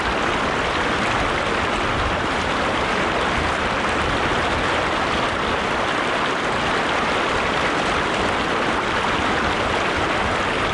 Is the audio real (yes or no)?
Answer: yes